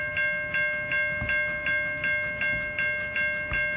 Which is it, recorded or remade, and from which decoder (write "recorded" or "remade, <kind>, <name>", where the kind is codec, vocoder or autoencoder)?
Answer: recorded